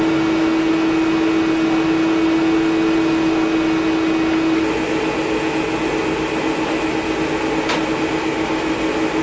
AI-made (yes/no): no